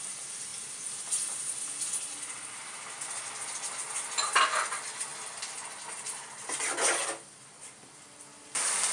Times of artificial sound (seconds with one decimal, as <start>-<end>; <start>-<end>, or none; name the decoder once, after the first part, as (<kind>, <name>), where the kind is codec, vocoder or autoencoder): none